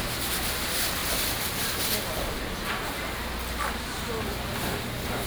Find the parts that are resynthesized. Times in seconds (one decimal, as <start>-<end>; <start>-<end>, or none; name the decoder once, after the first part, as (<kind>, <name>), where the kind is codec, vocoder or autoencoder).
none